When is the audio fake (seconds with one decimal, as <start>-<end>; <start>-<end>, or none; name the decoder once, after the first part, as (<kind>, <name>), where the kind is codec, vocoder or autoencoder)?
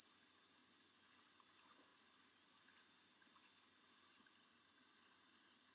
0.6-1.1 (vocoder, Vocos)